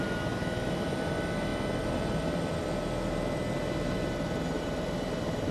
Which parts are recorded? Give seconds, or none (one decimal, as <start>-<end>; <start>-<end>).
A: 0.0-5.5